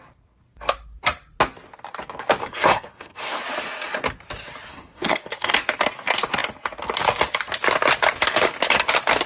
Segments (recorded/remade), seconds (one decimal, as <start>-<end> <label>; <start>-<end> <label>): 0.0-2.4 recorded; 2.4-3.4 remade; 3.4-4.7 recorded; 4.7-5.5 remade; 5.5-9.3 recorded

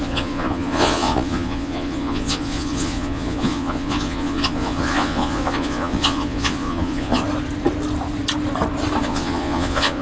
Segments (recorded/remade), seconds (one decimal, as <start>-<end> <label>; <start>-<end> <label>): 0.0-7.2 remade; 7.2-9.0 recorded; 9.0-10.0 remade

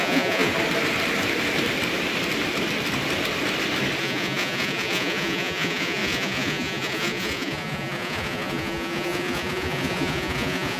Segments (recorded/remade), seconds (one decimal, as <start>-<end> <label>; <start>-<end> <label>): 0.0-0.5 remade; 0.5-4.0 recorded; 4.0-10.8 remade

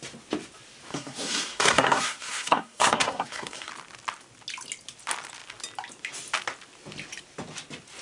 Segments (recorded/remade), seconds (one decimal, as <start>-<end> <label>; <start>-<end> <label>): 0.0-0.9 recorded; 0.9-3.7 remade; 3.7-8.0 recorded

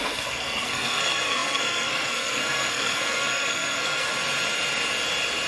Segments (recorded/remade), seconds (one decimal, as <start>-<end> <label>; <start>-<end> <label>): 0.0-4.1 remade; 4.1-5.5 recorded

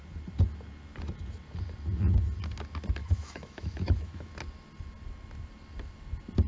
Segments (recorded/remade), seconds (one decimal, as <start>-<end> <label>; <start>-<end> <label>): 0.0-3.0 recorded; 3.0-4.3 remade; 4.3-6.5 recorded

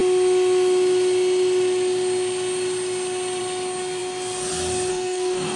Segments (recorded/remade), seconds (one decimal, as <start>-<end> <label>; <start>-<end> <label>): 0.0-4.9 recorded; 4.9-5.6 remade

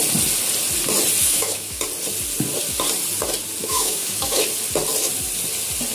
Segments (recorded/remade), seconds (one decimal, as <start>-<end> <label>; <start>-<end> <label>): 0.0-1.2 recorded; 1.2-1.8 remade; 1.8-3.6 recorded; 3.6-4.4 remade; 4.4-5.9 recorded